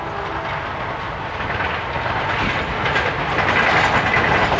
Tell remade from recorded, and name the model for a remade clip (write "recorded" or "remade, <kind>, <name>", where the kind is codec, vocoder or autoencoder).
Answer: recorded